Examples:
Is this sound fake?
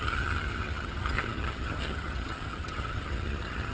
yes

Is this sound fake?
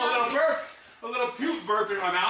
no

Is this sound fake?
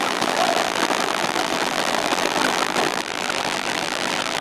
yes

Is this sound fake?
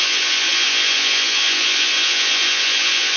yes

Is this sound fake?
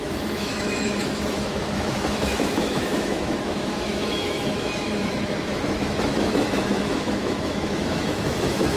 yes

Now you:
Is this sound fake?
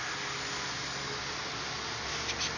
no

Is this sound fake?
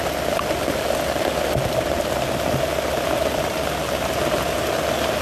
no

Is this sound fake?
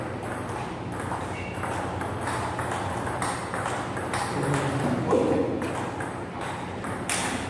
no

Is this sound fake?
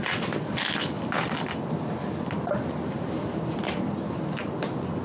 no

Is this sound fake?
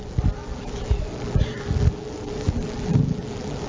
no